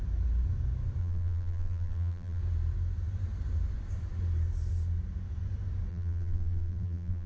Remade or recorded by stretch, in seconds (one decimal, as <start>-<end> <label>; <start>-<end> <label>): 0.0-1.0 recorded; 1.0-2.4 remade; 2.4-5.9 recorded; 5.9-7.3 remade